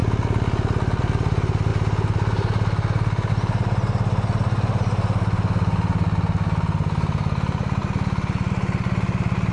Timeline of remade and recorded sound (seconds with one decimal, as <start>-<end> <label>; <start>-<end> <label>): 0.0-9.5 recorded